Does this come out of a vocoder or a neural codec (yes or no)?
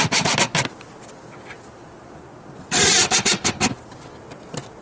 no